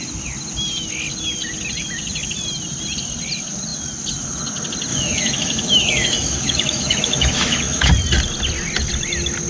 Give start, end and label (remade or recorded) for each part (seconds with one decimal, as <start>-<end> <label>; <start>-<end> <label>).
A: 0.0-4.9 recorded; 4.9-7.9 remade; 7.9-9.5 recorded